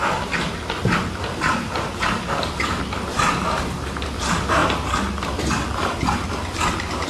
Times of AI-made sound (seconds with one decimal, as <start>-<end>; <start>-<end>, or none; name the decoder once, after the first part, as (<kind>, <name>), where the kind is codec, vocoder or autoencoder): 0.0-7.1 (vocoder, BigVGAN v2)